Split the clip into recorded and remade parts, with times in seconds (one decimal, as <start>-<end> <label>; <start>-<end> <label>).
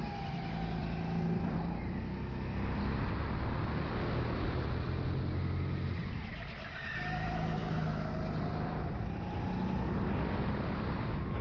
0.0-7.6 recorded; 7.6-8.1 remade; 8.1-11.4 recorded